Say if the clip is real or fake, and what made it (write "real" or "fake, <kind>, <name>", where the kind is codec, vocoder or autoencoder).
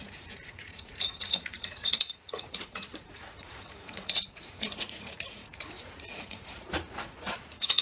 fake, vocoder, Vocos